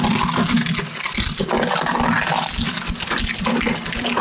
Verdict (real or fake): real